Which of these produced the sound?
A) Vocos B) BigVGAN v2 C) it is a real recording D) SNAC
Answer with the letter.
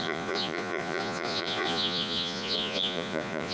A